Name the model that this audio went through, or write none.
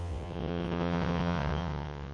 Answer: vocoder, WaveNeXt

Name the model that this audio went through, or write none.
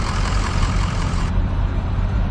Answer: vocoder, BigVGAN v2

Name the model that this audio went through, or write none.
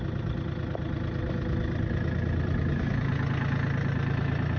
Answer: none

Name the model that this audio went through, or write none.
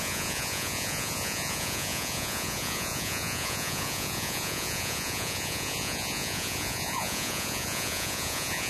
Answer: vocoder, Vocos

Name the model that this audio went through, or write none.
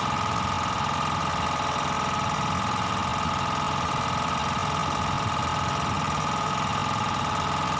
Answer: none